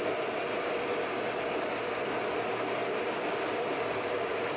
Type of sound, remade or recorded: recorded